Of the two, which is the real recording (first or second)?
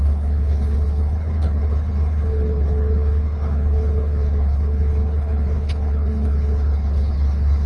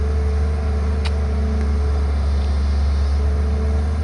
second